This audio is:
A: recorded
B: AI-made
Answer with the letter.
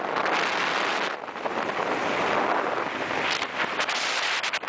A